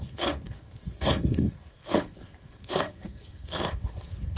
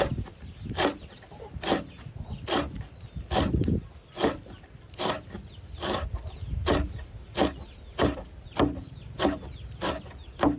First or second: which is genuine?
second